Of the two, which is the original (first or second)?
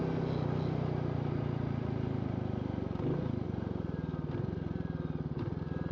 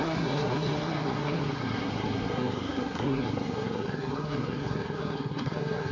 first